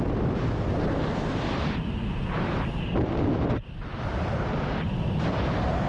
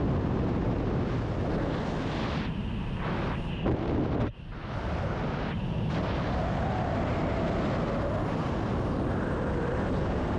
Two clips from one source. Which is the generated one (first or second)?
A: first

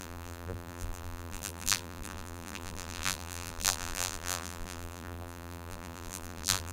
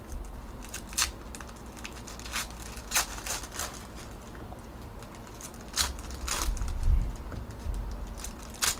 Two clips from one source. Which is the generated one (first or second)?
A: first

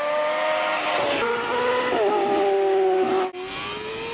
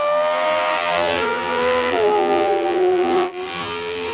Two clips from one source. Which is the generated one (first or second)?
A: second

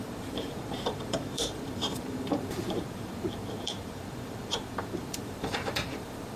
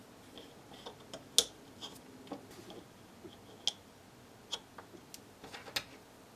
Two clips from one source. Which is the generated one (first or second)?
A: first